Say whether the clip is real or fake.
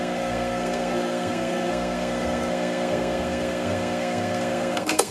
fake